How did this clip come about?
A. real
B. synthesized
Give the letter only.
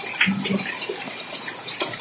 A